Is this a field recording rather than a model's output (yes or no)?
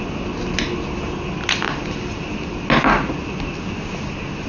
yes